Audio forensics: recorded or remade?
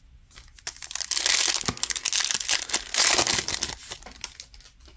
recorded